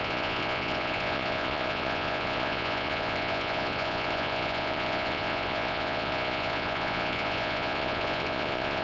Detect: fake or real fake